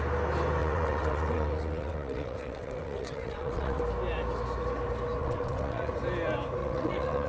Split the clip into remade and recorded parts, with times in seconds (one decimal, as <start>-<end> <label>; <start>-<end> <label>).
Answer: 0.0-0.6 recorded; 0.6-3.8 remade; 3.8-5.2 recorded; 5.2-5.9 remade; 5.9-6.6 recorded; 6.6-7.3 remade